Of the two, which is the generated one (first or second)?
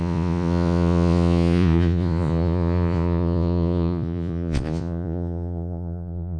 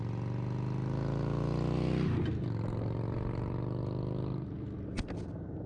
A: first